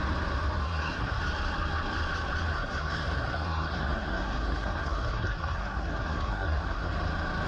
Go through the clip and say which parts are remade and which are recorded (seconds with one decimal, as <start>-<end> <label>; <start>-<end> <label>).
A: 0.0-0.6 recorded; 0.6-1.2 remade; 1.2-2.5 recorded; 2.5-6.9 remade; 6.9-7.5 recorded